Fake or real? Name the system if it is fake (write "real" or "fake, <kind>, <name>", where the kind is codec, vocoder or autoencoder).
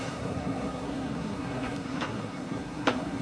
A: fake, codec, SNAC